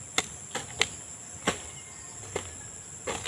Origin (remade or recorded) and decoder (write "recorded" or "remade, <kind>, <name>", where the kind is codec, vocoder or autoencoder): recorded